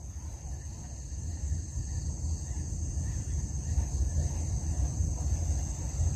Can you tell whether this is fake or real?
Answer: real